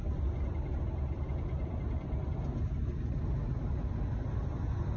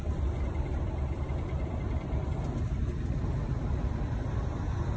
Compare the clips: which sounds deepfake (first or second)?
second